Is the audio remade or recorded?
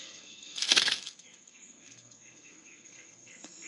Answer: remade